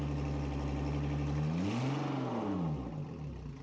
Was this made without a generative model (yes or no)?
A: yes